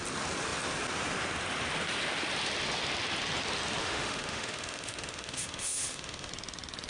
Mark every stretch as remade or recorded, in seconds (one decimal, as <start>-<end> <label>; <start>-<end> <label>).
0.0-3.8 recorded; 3.8-6.3 remade; 6.3-6.9 recorded